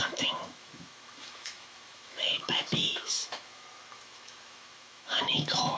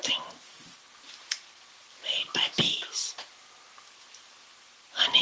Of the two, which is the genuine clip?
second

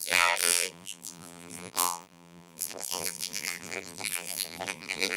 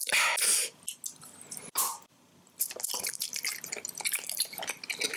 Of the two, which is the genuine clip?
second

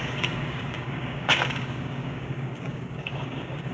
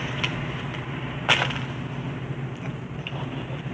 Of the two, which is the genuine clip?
second